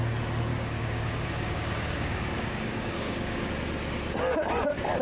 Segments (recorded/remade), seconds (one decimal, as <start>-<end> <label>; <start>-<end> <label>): 0.0-0.5 recorded; 0.5-3.5 remade; 3.5-5.0 recorded